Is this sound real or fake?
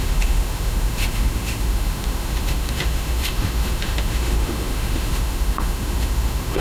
fake